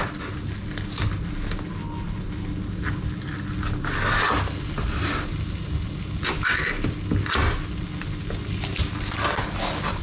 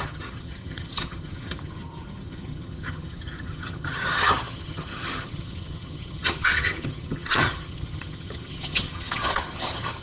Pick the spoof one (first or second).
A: second